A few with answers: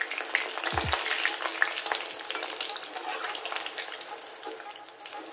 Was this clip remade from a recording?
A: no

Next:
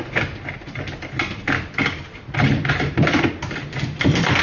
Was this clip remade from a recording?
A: no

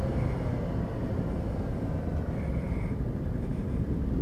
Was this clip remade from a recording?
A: no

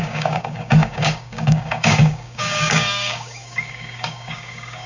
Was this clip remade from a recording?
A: yes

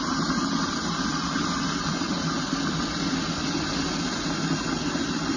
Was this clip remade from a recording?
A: no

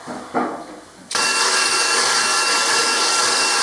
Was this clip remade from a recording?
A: yes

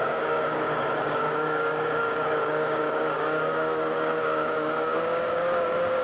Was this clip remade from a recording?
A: yes